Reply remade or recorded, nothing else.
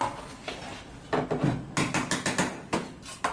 recorded